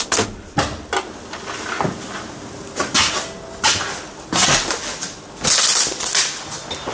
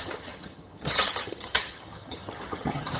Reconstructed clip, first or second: second